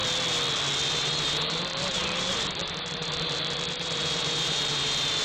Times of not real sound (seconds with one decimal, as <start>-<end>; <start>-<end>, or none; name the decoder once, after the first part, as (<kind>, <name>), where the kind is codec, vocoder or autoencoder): 0.9-5.2 (vocoder, BigVGAN v2)